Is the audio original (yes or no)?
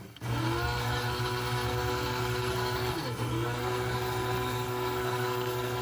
no